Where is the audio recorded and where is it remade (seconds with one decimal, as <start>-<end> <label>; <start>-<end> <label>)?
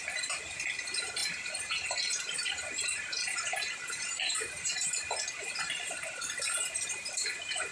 0.0-7.7 remade